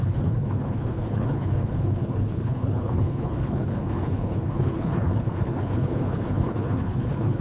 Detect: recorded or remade remade